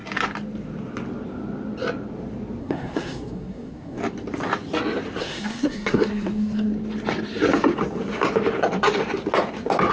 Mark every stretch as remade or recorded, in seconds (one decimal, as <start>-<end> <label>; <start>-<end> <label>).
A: 0.0-2.6 recorded; 2.6-4.0 remade; 4.0-5.2 recorded; 5.2-6.7 remade; 6.7-9.9 recorded